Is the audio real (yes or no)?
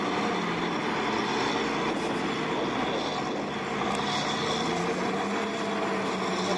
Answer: yes